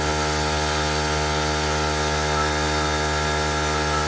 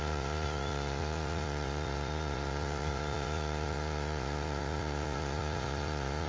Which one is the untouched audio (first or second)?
first